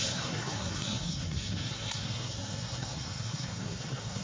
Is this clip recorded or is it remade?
remade